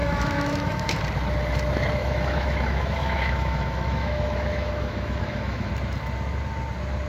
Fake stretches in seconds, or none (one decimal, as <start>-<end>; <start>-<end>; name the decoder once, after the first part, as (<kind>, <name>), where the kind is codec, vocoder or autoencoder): 0.0-1.0 (autoencoder, DAC-VAE); 2.0-5.7